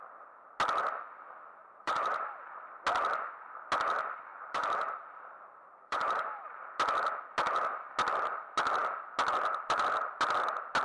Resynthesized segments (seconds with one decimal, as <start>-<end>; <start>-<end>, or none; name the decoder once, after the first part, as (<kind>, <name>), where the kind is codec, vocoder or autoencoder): 1.6-2.6 (vocoder, BigVGAN v2); 4.3-6.7